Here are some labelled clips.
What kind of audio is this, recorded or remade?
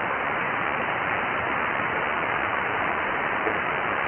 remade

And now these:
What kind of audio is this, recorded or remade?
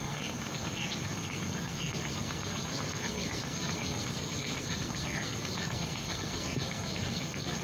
remade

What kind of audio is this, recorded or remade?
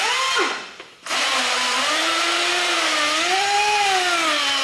recorded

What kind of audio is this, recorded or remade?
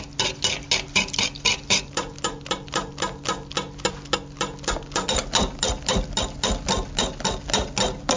recorded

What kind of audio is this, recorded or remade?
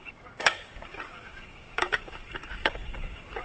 remade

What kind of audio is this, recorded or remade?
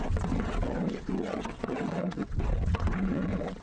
remade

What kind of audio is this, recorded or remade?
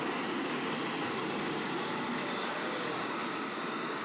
remade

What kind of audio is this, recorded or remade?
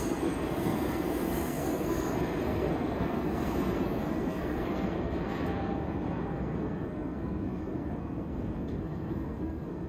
remade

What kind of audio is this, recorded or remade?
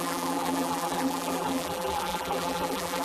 remade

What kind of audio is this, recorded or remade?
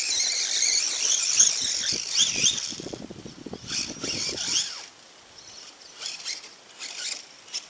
remade